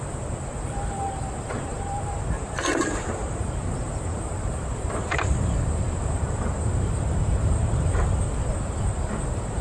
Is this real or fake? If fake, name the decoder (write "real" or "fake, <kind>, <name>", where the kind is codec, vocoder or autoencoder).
fake, vocoder, BigVGAN v2